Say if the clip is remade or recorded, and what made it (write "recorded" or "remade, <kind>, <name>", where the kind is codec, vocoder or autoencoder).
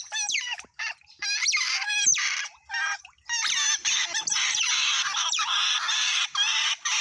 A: recorded